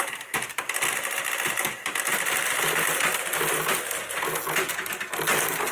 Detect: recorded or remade recorded